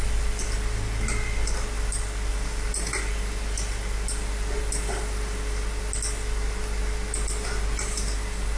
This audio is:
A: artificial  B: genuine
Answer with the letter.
B